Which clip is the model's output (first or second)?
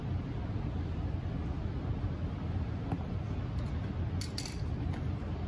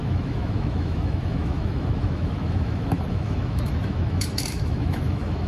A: second